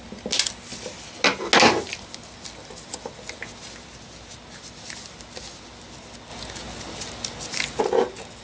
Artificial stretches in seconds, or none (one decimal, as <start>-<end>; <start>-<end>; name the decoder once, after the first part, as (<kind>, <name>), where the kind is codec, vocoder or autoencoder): none